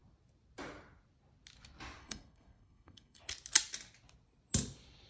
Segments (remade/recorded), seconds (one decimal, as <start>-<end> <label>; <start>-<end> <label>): 0.0-2.0 recorded; 2.0-3.2 remade; 3.2-5.1 recorded